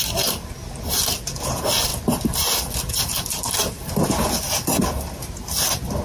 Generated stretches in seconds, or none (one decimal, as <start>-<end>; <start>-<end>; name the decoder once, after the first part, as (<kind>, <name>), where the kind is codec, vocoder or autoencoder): none